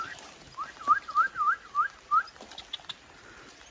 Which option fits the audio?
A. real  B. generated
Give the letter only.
A